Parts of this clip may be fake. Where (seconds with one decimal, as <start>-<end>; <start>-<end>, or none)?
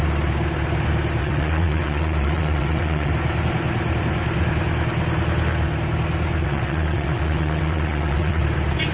1.2-3.1; 6.4-8.4